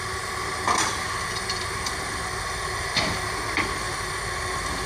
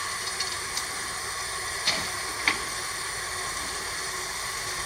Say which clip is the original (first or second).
first